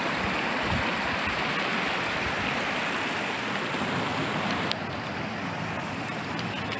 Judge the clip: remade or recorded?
recorded